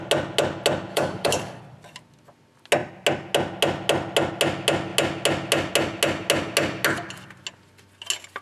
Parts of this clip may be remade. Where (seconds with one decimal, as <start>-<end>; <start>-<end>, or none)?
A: 0.9-1.6